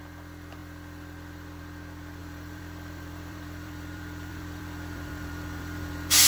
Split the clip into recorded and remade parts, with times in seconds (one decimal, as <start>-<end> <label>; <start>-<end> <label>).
0.0-2.2 recorded; 2.2-6.3 remade